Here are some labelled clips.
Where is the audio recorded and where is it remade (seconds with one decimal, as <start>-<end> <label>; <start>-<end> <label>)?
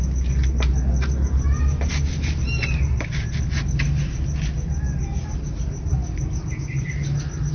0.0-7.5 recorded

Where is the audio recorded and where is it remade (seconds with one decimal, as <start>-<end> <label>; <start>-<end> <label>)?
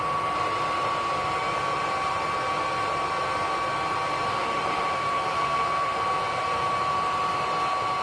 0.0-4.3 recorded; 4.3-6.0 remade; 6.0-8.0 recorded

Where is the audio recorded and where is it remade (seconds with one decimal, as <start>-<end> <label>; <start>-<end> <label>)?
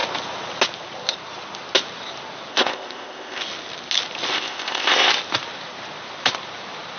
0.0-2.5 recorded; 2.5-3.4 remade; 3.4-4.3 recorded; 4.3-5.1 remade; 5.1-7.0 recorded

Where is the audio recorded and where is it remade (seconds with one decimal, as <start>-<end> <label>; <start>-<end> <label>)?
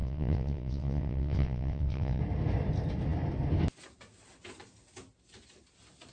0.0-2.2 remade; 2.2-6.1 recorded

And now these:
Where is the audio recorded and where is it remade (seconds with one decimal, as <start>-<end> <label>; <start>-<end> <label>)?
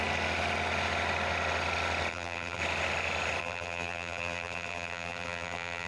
0.0-2.1 recorded; 2.1-2.6 remade; 2.6-3.4 recorded; 3.4-5.9 remade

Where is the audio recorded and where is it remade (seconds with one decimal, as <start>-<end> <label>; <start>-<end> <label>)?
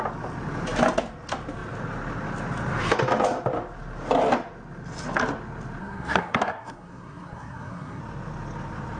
0.0-5.8 recorded; 5.8-8.0 remade; 8.0-9.0 recorded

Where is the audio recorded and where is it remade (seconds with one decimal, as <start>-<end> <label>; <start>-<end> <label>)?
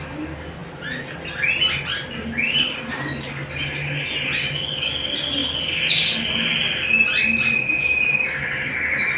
0.0-9.2 recorded